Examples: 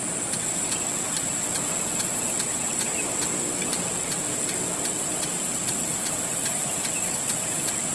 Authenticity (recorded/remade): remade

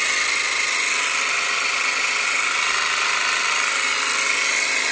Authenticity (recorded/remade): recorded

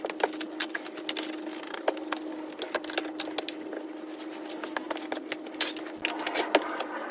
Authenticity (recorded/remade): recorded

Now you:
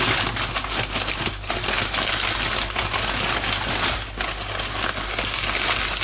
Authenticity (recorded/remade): recorded